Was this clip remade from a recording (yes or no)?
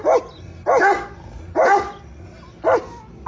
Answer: no